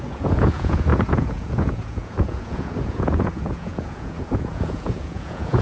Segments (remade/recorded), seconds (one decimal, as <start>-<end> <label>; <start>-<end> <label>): 0.0-5.6 remade